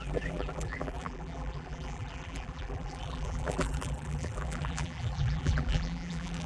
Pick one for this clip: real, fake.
fake